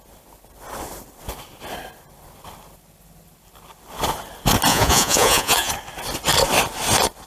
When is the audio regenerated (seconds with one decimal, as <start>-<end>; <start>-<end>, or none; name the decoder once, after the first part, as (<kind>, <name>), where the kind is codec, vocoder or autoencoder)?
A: 4.7-5.7 (vocoder, Vocos)